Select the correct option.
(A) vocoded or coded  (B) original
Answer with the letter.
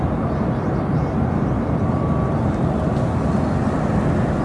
B